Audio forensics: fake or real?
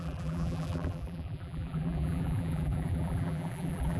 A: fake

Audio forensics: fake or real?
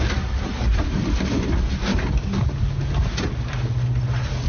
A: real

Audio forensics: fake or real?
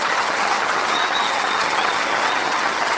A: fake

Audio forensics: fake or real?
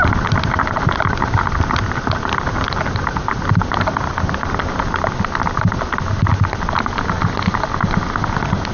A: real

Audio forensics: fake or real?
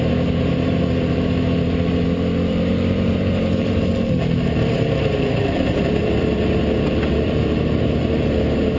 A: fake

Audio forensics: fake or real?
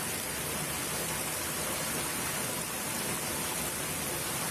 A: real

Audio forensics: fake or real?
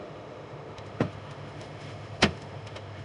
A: fake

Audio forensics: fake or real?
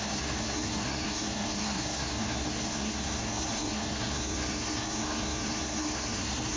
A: fake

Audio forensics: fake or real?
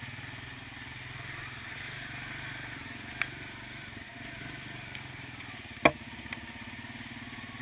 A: real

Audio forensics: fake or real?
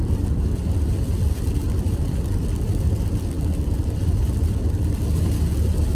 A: real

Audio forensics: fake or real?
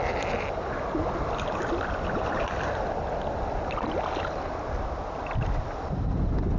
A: real